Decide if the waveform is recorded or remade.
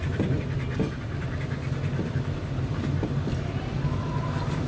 recorded